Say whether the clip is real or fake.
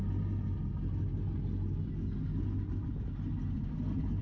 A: real